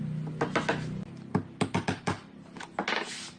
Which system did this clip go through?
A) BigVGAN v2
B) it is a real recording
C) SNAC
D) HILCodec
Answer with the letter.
B